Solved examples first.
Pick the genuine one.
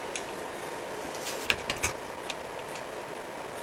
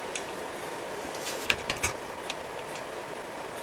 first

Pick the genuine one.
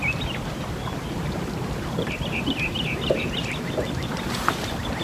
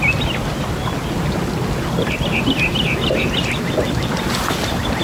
second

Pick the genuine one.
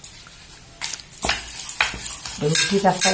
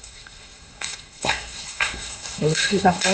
first